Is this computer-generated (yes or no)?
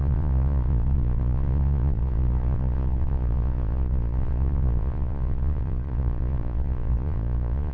yes